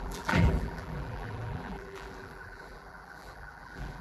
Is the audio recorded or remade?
remade